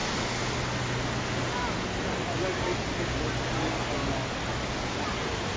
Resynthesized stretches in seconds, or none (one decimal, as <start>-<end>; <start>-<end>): none